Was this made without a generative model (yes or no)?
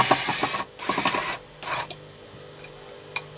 yes